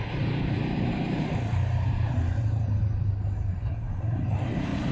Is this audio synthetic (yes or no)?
yes